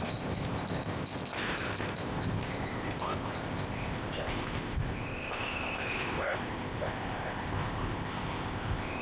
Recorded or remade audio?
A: remade